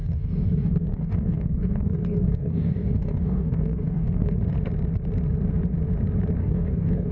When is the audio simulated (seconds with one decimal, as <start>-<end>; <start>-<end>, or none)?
0.0-4.3; 6.4-7.1